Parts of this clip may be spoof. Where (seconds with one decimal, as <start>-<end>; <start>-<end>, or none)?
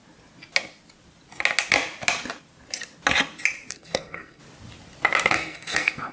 3.7-4.4; 5.3-6.1